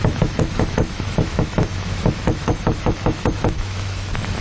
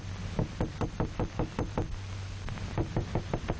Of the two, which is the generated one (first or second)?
first